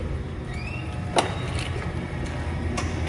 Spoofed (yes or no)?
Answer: no